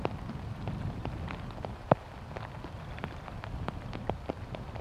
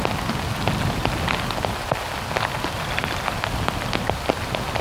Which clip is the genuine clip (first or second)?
second